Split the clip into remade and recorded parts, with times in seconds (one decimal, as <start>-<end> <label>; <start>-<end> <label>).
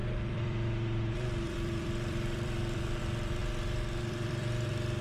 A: 0.0-3.4 remade; 3.4-4.0 recorded; 4.0-5.0 remade